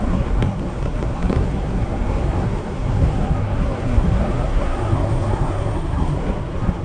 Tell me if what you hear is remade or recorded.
remade